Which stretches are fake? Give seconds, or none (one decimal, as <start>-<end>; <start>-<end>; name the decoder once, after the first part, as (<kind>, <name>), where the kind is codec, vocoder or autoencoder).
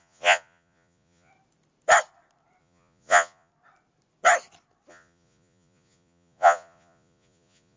0.0-1.3 (vocoder, Vocos); 2.6-3.5; 4.9-7.8